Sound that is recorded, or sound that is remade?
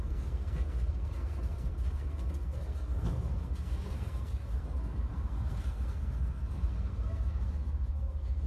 remade